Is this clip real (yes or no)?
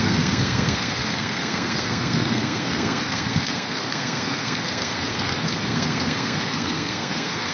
no